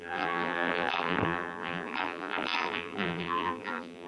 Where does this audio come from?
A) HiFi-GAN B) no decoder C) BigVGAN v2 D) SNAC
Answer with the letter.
C